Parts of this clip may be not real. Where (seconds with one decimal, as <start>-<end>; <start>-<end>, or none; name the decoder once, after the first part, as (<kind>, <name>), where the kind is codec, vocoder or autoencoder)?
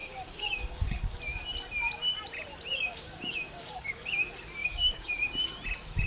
0.0-1.2 (codec, DAC); 2.7-4.1; 4.6-5.3